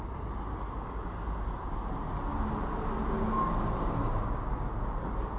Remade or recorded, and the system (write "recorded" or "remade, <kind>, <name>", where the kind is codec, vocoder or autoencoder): recorded